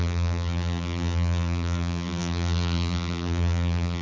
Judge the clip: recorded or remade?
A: remade